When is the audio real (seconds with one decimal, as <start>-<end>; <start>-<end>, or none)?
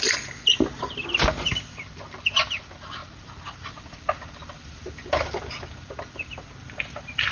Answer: 0.0-7.3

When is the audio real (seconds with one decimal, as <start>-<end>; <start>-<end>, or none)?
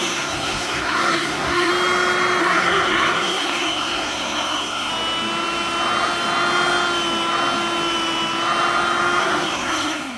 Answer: 1.7-2.4; 4.9-9.2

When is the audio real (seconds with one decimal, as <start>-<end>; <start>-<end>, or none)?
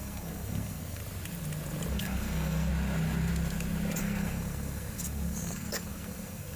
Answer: 1.0-1.9; 2.7-4.0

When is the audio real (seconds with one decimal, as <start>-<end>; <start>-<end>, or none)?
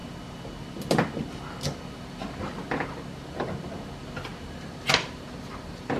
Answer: 0.0-6.0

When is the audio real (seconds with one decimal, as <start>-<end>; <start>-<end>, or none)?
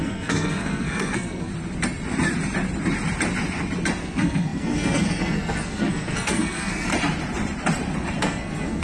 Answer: 1.5-4.0; 6.9-8.2